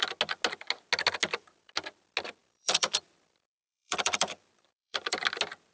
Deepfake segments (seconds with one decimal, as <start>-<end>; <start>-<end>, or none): 2.4-5.2